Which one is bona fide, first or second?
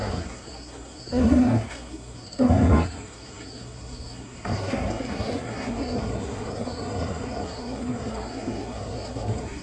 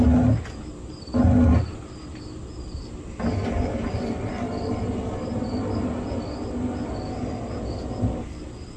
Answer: second